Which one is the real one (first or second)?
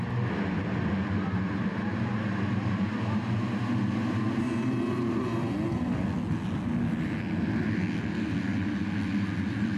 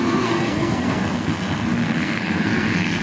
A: first